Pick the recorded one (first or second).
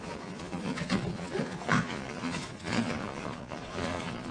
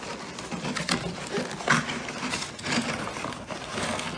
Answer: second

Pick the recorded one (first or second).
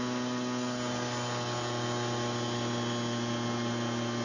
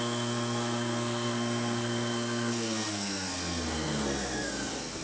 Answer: first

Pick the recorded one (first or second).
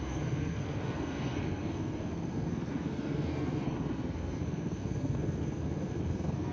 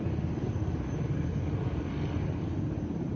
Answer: second